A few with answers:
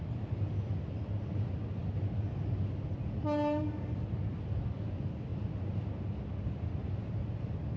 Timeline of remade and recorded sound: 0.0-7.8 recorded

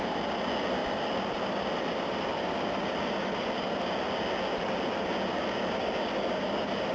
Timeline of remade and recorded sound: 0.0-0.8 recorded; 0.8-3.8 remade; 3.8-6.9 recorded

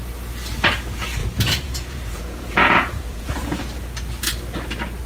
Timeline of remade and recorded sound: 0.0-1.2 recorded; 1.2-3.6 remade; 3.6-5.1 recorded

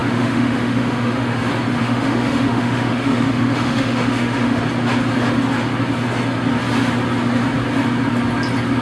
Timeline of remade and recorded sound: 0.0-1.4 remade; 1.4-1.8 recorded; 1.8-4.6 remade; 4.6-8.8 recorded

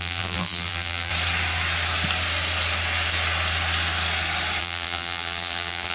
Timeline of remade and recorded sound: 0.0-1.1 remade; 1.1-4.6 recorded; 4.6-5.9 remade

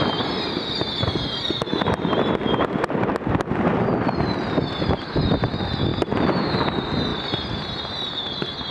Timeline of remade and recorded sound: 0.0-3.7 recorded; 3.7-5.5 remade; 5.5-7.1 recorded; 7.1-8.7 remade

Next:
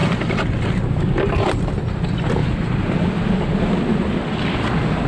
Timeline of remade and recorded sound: 0.0-5.1 recorded